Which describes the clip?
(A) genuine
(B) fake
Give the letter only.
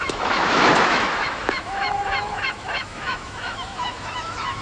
B